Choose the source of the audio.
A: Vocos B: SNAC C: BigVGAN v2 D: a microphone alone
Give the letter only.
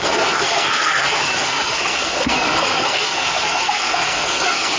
B